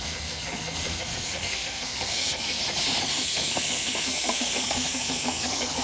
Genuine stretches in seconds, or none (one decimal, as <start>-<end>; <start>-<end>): 2.6-3.1